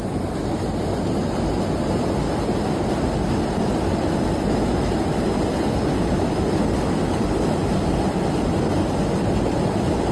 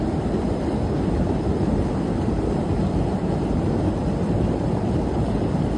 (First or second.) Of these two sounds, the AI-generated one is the second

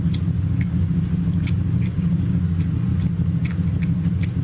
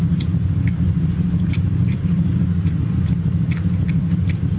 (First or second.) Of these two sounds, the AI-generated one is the second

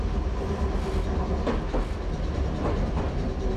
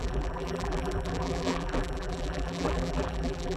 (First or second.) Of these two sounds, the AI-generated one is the second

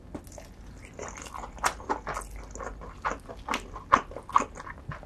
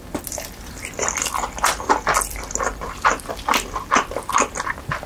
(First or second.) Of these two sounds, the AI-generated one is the second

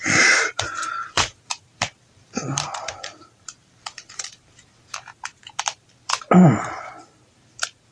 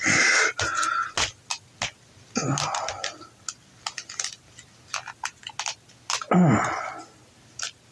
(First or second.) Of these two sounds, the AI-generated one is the first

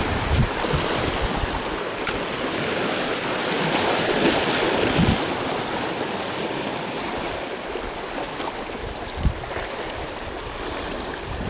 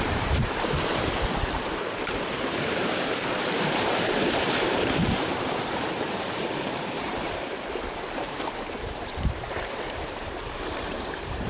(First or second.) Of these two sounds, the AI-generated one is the second